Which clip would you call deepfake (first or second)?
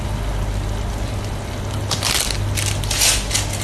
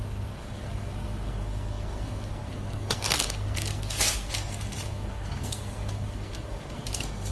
second